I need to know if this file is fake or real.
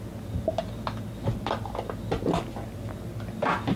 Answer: real